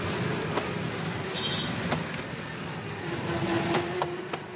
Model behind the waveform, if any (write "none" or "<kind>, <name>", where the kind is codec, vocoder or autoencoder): none